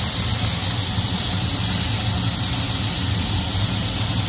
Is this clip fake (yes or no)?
no